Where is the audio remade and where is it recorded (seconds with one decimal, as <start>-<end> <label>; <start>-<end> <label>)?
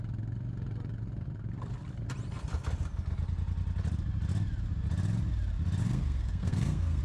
0.0-5.8 recorded; 5.8-7.0 remade